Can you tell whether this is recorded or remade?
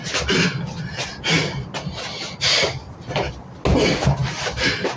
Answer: recorded